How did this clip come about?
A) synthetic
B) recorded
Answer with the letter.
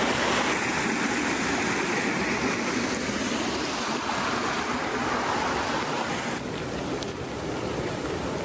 B